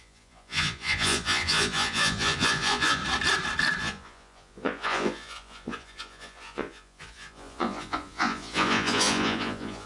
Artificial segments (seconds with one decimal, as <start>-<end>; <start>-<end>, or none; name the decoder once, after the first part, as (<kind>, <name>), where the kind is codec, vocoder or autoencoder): 0.0-3.0 (vocoder, Vocos); 3.8-9.9